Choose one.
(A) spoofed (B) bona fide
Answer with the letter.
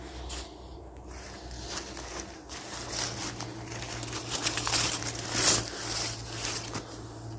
B